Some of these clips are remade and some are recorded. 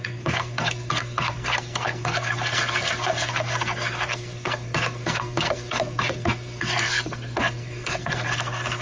remade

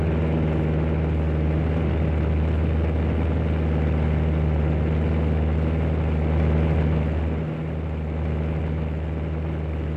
recorded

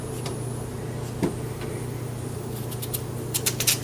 recorded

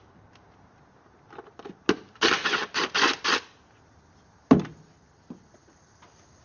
recorded